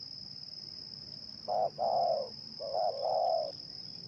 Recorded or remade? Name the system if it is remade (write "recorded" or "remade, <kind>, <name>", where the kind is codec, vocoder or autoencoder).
recorded